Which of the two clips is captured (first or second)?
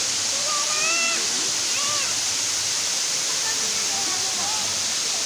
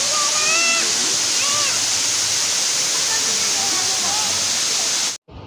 second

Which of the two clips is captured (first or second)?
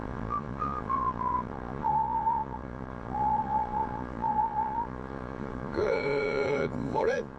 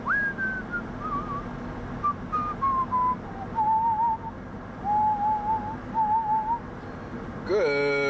second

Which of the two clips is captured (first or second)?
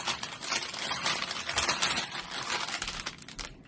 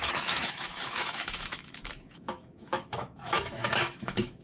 first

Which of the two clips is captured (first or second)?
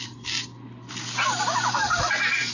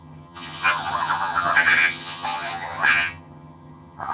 first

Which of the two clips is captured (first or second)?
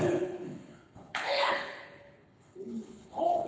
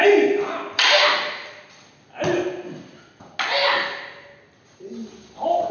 second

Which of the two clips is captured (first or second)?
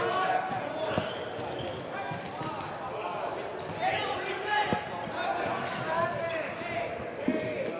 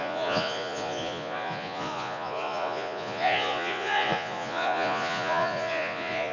first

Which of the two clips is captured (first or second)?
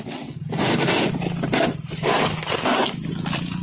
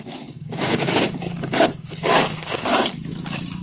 first